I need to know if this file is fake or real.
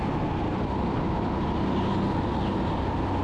real